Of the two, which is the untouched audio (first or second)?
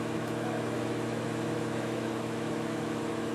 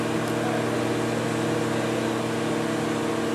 second